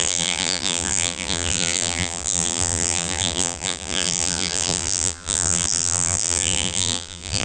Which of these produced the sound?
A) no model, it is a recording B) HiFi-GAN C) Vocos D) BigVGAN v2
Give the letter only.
D